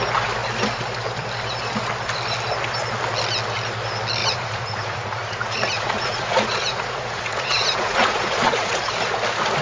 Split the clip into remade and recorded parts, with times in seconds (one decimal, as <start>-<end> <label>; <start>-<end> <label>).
0.0-4.2 recorded; 4.2-8.9 remade; 8.9-9.6 recorded

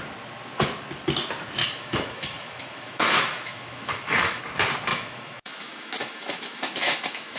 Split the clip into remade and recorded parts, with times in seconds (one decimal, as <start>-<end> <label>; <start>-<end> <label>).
0.0-1.6 recorded; 1.6-4.4 remade; 4.4-4.9 recorded; 4.9-7.4 remade

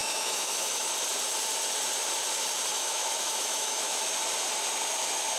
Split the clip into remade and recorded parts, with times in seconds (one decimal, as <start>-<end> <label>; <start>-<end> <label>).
0.0-0.9 remade; 0.9-2.7 recorded; 2.7-4.0 remade; 4.0-5.4 recorded

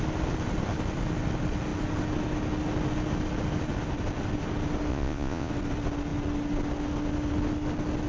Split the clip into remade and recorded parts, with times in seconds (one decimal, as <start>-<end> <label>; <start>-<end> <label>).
0.0-4.9 recorded; 4.9-5.5 remade; 5.5-8.1 recorded

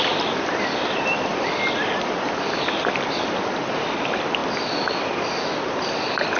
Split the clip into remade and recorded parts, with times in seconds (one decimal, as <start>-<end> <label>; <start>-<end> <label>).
0.0-6.4 recorded

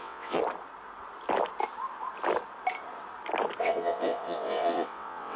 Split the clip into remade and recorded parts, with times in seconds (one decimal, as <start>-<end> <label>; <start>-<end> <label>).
0.0-0.4 remade; 0.4-3.6 recorded; 3.6-5.4 remade

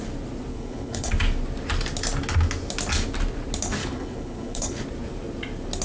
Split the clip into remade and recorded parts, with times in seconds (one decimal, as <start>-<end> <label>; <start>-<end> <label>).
0.0-0.5 recorded; 0.5-1.1 remade; 1.1-3.8 recorded; 3.8-4.8 remade; 4.8-5.8 recorded